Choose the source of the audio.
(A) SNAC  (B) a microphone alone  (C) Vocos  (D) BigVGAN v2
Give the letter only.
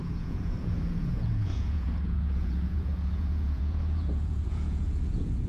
C